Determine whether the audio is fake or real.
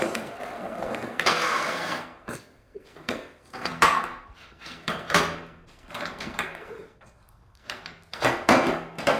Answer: fake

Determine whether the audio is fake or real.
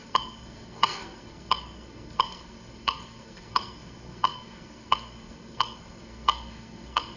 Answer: fake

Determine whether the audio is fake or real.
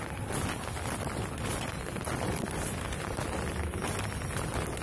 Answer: real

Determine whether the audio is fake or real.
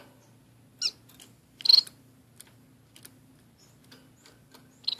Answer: real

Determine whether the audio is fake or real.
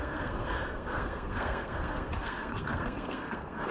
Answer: fake